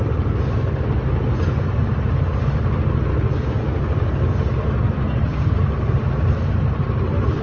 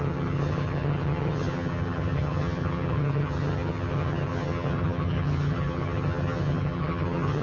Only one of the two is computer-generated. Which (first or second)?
second